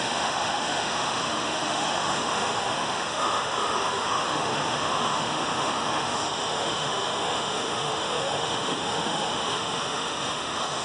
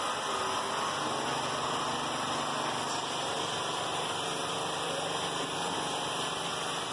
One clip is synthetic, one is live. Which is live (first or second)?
second